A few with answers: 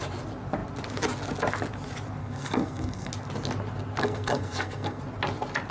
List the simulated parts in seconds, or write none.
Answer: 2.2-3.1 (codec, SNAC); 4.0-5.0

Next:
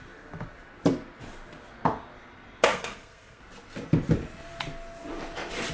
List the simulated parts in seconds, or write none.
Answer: 2.7-3.4 (codec, SNAC)

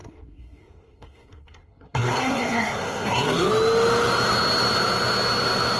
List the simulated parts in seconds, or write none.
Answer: 0.0-3.5 (codec, SNAC)